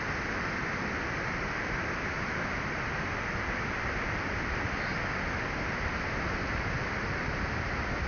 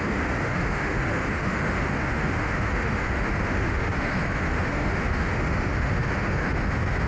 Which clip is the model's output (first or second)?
second